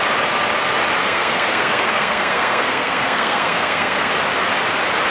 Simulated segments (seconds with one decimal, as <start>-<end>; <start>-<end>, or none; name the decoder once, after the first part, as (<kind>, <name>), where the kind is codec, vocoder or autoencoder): 1.0-4.1 (codec, SNAC)